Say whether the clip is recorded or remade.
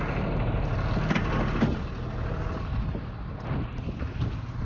recorded